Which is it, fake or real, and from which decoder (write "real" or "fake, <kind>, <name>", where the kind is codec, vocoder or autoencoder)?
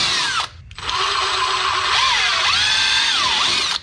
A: real